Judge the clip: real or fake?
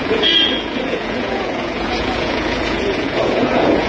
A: fake